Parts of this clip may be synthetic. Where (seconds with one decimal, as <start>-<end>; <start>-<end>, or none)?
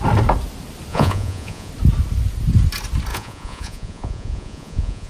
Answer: 0.9-1.7; 3.1-5.1